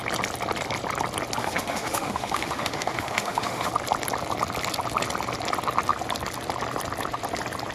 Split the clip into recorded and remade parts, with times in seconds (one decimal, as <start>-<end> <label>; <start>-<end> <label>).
0.0-1.4 recorded; 1.4-3.7 remade; 3.7-7.7 recorded